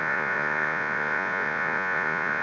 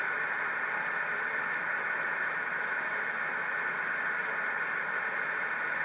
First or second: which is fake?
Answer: first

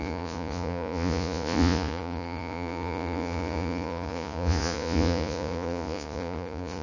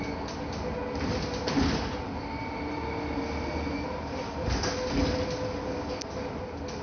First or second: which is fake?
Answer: first